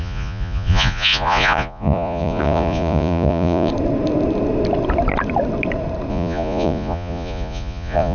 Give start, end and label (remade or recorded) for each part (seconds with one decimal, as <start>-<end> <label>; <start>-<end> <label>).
0.0-3.7 remade; 3.7-6.1 recorded; 6.1-8.1 remade